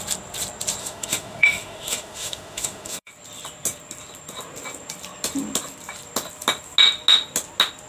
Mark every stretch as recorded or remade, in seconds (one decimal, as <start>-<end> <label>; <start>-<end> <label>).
0.0-0.8 recorded; 0.8-3.1 remade; 3.1-7.9 recorded

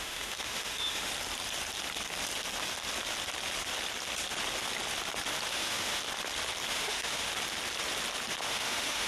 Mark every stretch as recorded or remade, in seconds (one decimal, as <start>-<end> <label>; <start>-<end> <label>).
0.0-1.1 remade; 1.1-5.5 recorded; 5.5-6.0 remade; 6.0-6.7 recorded; 6.7-7.3 remade; 7.3-8.4 recorded; 8.4-9.1 remade

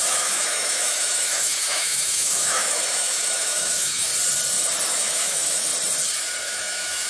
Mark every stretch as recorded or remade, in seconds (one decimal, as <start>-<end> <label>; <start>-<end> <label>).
0.0-4.1 remade; 4.1-4.9 recorded; 4.9-5.7 remade; 5.7-6.4 recorded; 6.4-7.1 remade

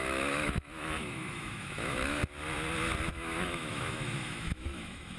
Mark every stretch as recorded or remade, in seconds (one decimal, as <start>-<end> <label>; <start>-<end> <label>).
0.0-2.2 remade; 2.2-3.1 recorded; 3.1-5.2 remade

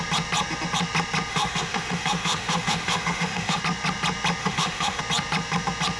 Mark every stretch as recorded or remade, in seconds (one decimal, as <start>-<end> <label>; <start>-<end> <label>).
0.0-1.3 recorded; 1.3-3.6 remade; 3.6-4.4 recorded; 4.4-5.0 remade; 5.0-6.0 recorded